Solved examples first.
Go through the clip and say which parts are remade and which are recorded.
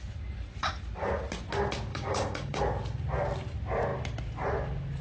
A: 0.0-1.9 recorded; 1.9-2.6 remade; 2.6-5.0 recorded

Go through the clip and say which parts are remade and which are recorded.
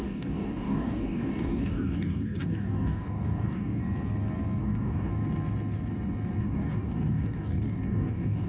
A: 0.0-3.8 remade; 3.8-4.6 recorded; 4.6-5.1 remade; 5.1-6.4 recorded; 6.4-8.5 remade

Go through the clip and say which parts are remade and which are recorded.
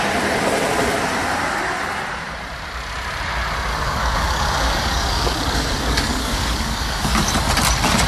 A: 0.0-3.7 recorded; 3.7-7.3 remade; 7.3-8.1 recorded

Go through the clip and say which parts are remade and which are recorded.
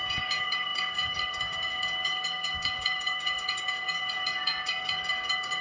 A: 0.0-5.6 remade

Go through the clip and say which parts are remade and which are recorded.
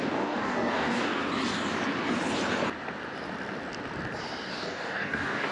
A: 0.0-1.2 remade; 1.2-4.5 recorded; 4.5-5.5 remade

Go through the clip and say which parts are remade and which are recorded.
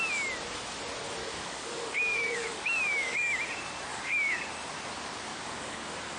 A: 0.0-1.2 recorded; 1.2-3.3 remade; 3.3-3.9 recorded; 3.9-4.5 remade; 4.5-5.3 recorded; 5.3-6.2 remade